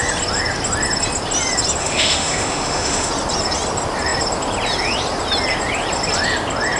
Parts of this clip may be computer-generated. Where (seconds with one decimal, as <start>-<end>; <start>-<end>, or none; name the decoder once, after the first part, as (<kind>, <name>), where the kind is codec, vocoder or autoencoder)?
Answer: 1.8-3.1 (autoencoder, DAC-VAE)